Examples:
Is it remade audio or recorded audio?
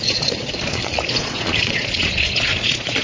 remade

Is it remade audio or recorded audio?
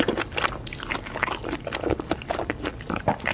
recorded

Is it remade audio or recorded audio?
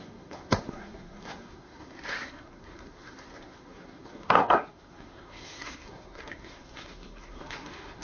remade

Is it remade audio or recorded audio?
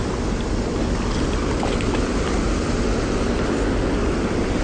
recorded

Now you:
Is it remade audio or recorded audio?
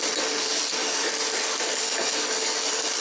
recorded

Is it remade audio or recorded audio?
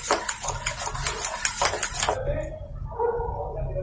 recorded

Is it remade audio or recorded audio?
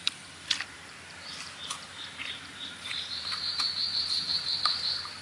remade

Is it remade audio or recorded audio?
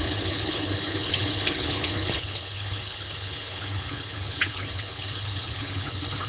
remade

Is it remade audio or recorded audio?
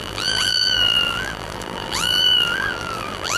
remade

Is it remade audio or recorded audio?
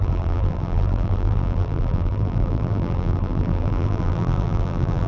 remade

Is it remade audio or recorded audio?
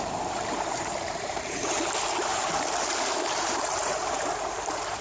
remade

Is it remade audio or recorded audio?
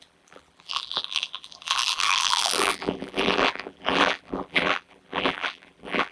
remade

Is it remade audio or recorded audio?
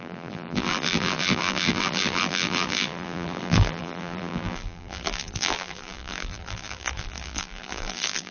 remade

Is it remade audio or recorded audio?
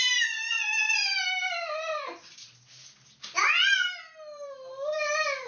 recorded